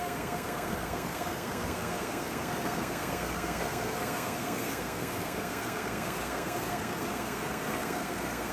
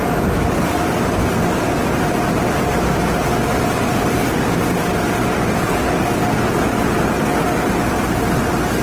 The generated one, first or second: first